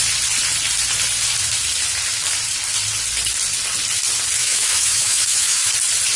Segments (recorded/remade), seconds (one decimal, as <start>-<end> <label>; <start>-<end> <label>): 0.0-4.4 recorded; 4.4-5.7 remade; 5.7-6.2 recorded